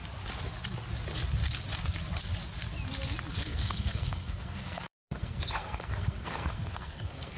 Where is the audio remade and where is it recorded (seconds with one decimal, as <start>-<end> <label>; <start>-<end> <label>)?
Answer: 0.0-3.3 recorded; 3.3-7.4 remade